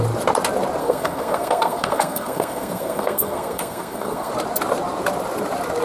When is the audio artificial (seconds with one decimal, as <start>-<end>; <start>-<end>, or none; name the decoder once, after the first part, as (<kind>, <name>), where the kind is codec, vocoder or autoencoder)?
0.8-4.3 (codec, SNAC)